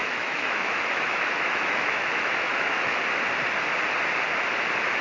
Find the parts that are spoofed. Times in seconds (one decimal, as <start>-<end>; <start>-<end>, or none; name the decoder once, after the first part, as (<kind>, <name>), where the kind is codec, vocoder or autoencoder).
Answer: 0.0-3.0 (autoencoder, DAC-VAE)